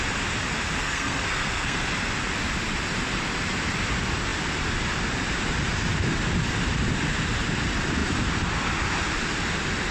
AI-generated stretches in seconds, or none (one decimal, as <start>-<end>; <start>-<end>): 0.8-1.8